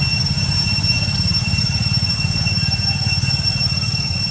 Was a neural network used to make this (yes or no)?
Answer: no